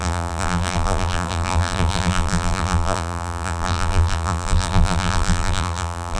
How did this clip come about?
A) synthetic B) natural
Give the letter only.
A